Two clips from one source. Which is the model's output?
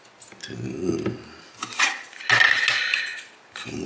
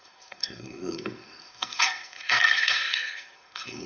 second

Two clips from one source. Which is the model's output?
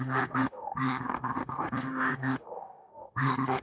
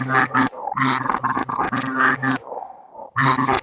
first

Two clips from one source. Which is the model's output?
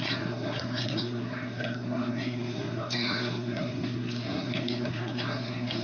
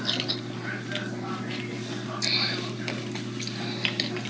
first